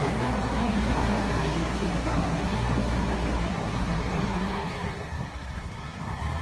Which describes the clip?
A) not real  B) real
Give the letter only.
A